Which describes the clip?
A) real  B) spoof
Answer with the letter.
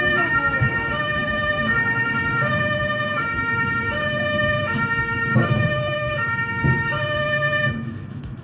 B